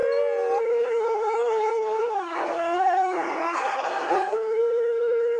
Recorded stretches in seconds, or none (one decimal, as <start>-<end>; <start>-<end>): 0.0-0.6